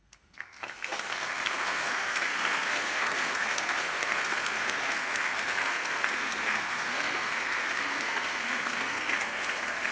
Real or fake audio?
fake